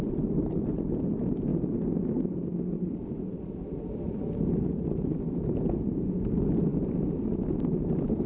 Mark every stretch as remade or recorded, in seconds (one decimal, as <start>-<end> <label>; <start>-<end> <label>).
0.0-1.5 remade; 1.5-6.2 recorded; 6.2-8.3 remade